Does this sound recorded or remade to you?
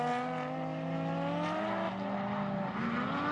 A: recorded